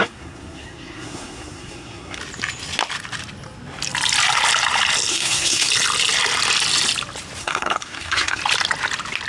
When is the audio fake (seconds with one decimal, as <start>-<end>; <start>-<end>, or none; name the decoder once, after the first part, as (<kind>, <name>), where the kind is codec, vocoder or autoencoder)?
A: 0.0-2.2 (codec, SNAC); 5.1-5.7; 7.4-8.4